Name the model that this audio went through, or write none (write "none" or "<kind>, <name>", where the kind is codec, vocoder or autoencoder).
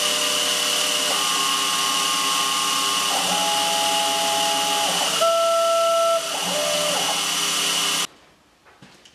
none